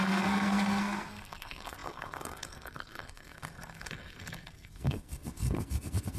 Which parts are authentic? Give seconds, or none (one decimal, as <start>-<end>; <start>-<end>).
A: none